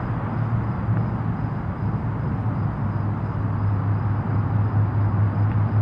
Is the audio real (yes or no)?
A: yes